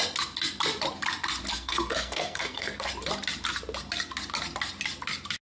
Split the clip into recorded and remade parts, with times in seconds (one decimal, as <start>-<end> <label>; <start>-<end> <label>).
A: 0.0-1.5 recorded; 1.5-2.9 remade; 2.9-5.5 recorded